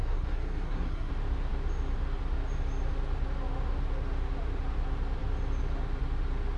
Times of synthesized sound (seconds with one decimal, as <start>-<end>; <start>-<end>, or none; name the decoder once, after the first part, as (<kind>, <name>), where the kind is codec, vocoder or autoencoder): 0.0-1.1 (codec, SNAC)